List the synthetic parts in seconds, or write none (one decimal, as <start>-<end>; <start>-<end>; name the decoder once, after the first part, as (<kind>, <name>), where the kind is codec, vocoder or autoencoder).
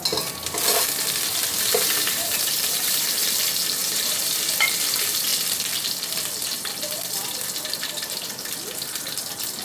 1.4-3.0 (vocoder, BigVGAN v2); 3.8-4.3